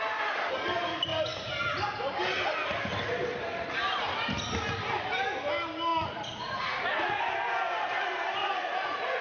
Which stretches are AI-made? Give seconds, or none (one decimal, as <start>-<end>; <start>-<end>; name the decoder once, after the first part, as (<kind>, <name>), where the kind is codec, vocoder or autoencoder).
5.9-7.2 (vocoder, Vocos); 8.4-9.2